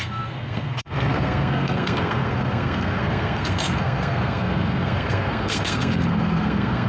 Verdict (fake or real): fake